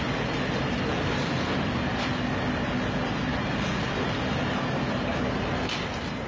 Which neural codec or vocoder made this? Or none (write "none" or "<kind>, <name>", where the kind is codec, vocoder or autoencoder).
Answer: none